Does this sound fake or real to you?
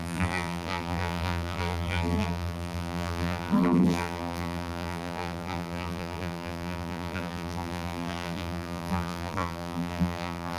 fake